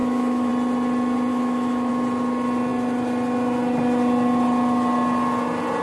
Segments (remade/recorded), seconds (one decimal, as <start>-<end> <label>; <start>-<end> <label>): 0.0-0.5 remade; 0.5-1.3 recorded; 1.3-1.9 remade; 1.9-5.8 recorded